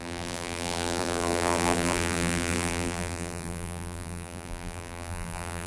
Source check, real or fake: fake